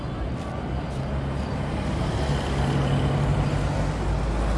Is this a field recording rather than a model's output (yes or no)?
yes